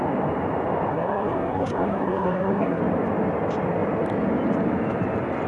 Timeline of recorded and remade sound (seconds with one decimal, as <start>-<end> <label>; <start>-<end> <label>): 0.0-0.9 recorded; 0.9-2.8 remade; 2.8-5.5 recorded